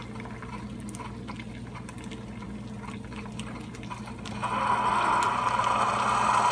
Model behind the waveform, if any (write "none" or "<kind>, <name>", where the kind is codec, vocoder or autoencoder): none